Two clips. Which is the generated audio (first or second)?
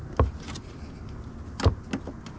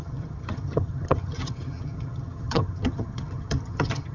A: second